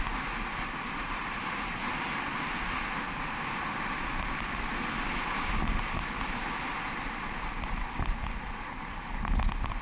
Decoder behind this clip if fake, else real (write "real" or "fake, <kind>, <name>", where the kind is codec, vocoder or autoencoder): real